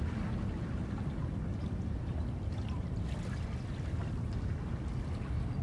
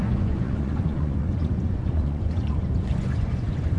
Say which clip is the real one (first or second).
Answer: first